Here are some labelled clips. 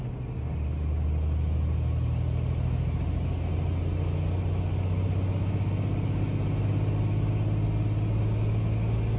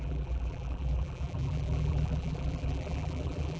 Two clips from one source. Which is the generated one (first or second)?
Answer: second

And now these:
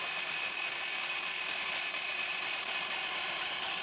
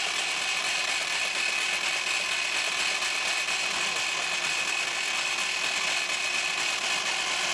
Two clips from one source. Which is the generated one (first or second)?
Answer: first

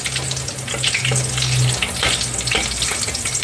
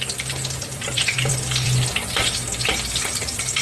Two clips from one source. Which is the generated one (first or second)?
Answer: second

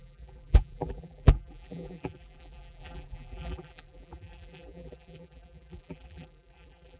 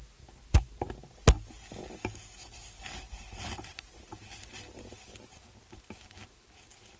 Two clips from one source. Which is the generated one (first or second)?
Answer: first